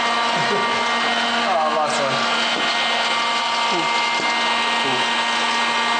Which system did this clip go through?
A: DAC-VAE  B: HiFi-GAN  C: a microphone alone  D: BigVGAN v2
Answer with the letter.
C